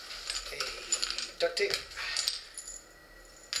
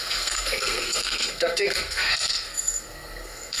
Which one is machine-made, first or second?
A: second